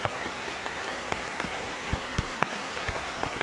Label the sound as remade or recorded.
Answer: remade